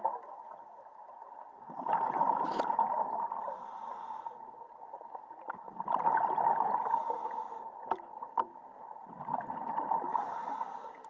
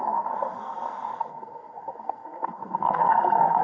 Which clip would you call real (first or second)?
first